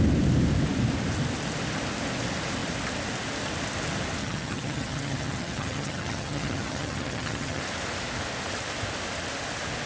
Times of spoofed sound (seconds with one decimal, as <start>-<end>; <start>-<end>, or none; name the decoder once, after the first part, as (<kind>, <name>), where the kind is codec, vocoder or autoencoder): 4.2-7.6 (vocoder, HiFi-GAN)